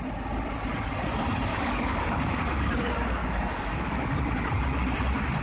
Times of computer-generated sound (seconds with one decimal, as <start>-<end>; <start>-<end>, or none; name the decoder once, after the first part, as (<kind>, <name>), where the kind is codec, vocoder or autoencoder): 1.5-4.2 (codec, DAC)

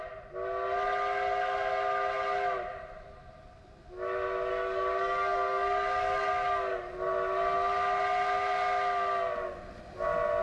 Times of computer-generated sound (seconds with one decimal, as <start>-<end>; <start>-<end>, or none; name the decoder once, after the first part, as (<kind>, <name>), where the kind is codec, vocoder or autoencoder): 4.5-6.9 (codec, DAC)

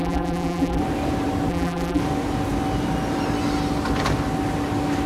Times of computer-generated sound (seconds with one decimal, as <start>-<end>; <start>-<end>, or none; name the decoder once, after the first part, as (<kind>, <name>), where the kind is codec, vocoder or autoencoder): 0.0-0.8 (vocoder, BigVGAN v2); 1.5-2.0

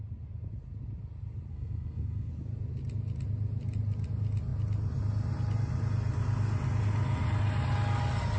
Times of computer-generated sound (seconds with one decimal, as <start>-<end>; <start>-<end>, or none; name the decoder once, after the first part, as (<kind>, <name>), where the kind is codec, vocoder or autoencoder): 1.5-2.3 (codec, SNAC)